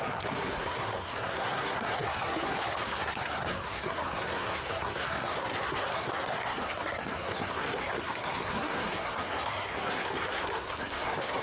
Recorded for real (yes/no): no